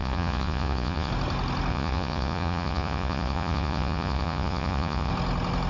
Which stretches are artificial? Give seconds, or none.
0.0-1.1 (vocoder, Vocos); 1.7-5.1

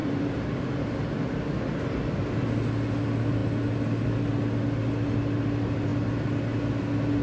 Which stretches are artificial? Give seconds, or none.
0.0-0.6 (vocoder, BigVGAN v2)

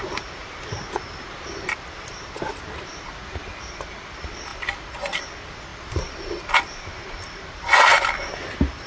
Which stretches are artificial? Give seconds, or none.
none

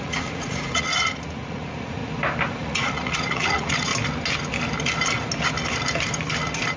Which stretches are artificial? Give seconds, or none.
0.0-2.0 (vocoder, Vocos); 2.6-3.9

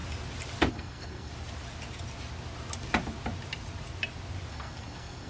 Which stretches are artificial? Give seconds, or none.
0.7-1.3 (codec, SNAC); 4.5-5.3

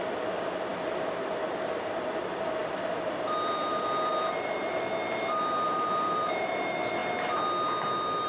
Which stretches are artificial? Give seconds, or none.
0.0-5.0 (vocoder, BigVGAN v2); 5.9-7.0

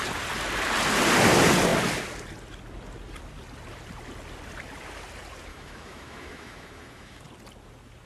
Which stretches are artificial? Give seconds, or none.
5.5-7.2 (autoencoder, DAC-VAE)